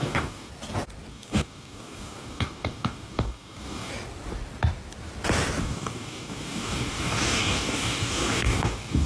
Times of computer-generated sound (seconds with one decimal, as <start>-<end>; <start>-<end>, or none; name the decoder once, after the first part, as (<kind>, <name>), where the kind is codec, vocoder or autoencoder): 0.0-0.5 (codec, DAC); 1.1-3.9; 5.6-9.1